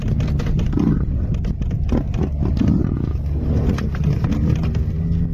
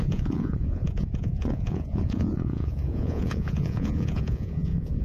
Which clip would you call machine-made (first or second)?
second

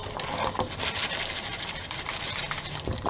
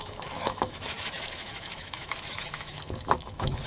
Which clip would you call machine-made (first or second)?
second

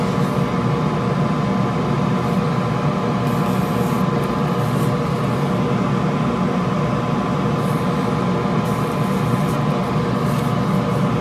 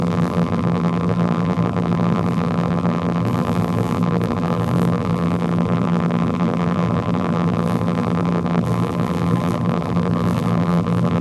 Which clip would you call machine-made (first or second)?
second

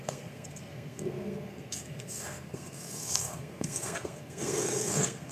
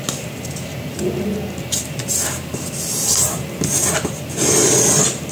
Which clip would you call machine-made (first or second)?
first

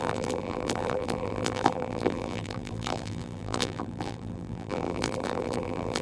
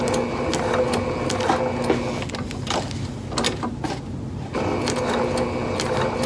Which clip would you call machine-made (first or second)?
first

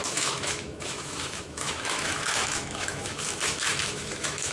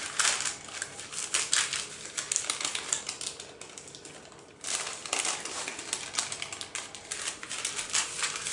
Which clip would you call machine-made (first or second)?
first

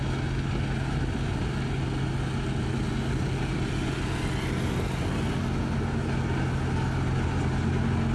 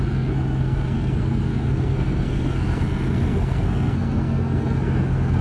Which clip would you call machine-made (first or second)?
second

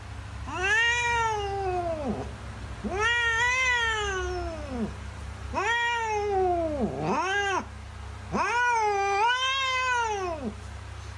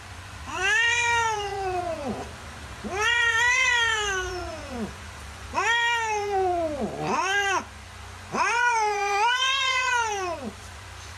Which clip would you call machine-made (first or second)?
second